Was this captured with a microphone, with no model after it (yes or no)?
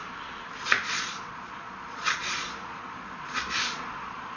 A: no